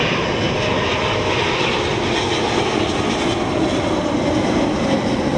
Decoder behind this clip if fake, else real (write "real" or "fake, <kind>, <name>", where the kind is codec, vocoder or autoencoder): real